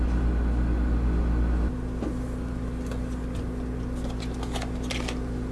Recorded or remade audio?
recorded